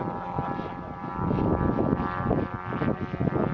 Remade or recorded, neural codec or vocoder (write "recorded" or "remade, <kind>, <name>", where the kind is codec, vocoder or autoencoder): recorded